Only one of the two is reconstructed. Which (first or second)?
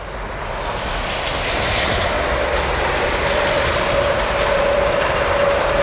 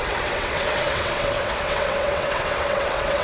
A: second